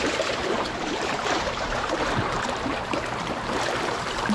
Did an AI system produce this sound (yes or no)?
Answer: yes